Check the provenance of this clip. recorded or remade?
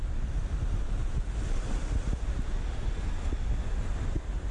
recorded